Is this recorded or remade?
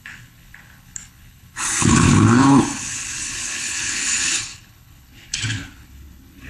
remade